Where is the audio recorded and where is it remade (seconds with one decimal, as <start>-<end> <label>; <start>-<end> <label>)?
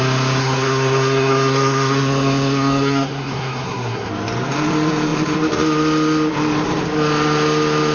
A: 0.0-0.4 recorded; 0.4-4.1 remade; 4.1-7.9 recorded